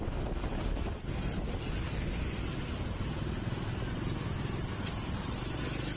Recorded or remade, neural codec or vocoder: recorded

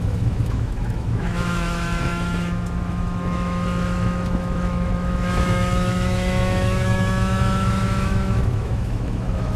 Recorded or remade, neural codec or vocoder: remade, autoencoder, DAC-VAE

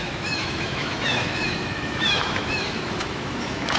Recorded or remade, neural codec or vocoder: remade, autoencoder, DAC-VAE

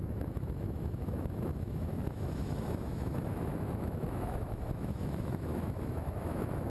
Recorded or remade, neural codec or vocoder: remade, autoencoder, DAC-VAE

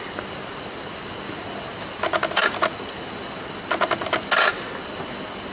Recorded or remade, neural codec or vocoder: recorded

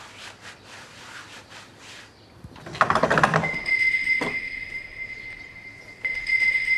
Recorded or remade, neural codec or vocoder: recorded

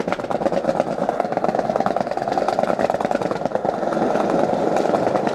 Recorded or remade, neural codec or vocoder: recorded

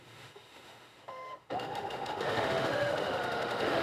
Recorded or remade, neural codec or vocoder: remade, autoencoder, DAC-VAE